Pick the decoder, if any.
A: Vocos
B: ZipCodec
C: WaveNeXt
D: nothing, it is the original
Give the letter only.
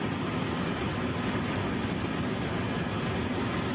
D